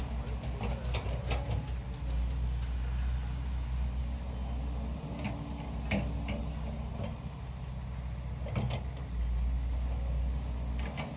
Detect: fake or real real